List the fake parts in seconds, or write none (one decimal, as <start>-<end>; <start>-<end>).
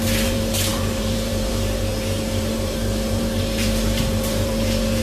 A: 0.0-5.0